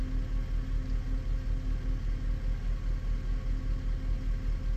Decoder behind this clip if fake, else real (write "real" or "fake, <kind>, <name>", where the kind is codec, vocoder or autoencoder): real